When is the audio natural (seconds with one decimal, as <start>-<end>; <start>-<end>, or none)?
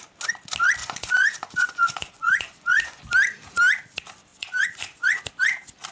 0.0-0.8; 3.0-4.3; 5.2-5.9